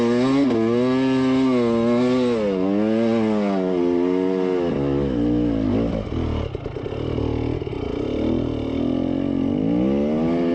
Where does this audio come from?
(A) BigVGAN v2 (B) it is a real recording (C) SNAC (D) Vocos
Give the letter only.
B